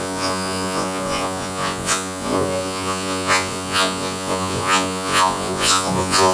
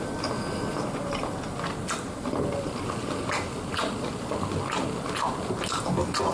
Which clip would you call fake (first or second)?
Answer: first